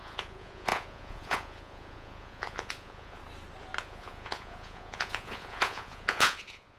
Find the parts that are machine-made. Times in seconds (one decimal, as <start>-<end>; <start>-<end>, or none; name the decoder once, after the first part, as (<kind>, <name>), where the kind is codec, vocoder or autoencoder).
0.0-3.2 (vocoder, Vocos); 3.8-6.8